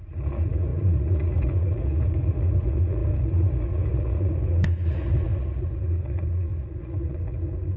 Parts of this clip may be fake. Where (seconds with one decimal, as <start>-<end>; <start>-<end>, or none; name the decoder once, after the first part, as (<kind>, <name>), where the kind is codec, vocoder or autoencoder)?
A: 0.0-7.8 (vocoder, Vocos)